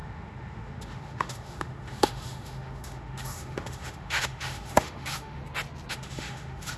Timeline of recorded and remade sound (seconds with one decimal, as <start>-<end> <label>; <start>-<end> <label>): 0.0-5.4 remade; 5.4-5.9 recorded; 5.9-6.8 remade